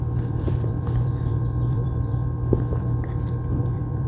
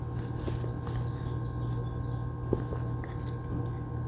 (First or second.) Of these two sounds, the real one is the second